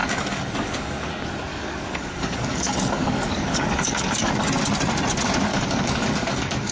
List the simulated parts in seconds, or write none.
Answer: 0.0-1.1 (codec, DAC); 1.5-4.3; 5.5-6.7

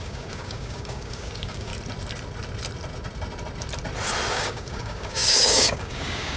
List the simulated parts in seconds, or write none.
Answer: 0.0-1.7 (codec, DAC); 4.3-6.4